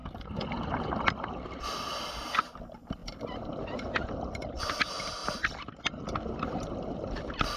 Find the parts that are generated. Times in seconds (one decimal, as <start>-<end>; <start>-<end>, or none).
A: none